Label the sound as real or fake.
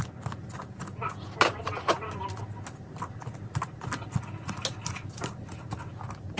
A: real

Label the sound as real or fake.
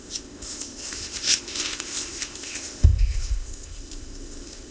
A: fake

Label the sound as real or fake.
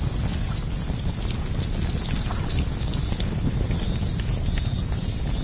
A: real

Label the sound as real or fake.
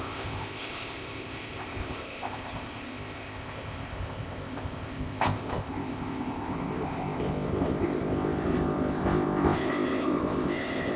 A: fake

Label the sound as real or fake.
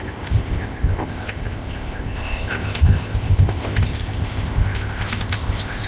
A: fake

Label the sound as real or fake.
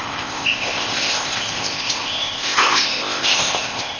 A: fake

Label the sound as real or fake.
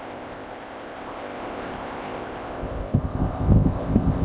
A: fake